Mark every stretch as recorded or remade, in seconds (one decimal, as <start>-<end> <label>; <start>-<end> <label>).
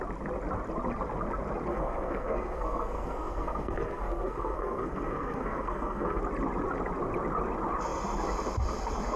0.0-1.7 recorded; 1.7-6.2 remade; 6.2-9.2 recorded